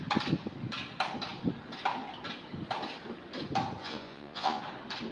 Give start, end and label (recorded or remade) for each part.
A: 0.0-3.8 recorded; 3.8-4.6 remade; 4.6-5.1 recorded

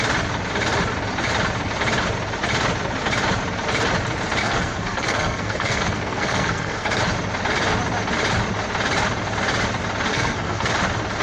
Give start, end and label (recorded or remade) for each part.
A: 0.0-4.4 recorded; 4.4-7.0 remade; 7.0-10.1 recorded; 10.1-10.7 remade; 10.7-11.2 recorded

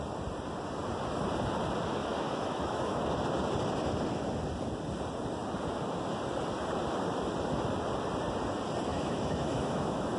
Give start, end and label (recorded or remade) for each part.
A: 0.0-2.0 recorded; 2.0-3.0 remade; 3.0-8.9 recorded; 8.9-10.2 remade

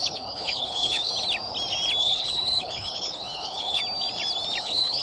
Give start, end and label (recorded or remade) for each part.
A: 0.0-1.1 remade; 1.1-2.0 recorded; 2.0-3.8 remade; 3.8-4.6 recorded; 4.6-5.0 remade

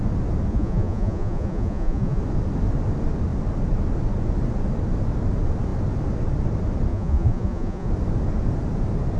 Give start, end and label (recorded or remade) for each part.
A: 0.0-0.5 recorded; 0.5-2.2 remade; 2.2-6.9 recorded; 6.9-7.9 remade; 7.9-9.2 recorded

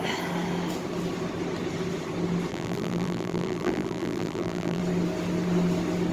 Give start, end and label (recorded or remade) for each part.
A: 0.0-2.5 recorded; 2.5-4.8 remade; 4.8-6.1 recorded

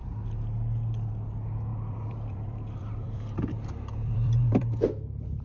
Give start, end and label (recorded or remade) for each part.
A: 0.0-1.7 recorded; 1.7-4.9 remade; 4.9-5.4 recorded